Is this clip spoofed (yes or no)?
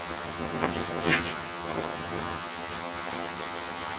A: yes